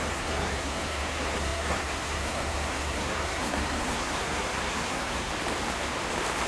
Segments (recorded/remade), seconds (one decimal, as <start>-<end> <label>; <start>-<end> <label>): 0.0-5.3 remade; 5.3-6.5 recorded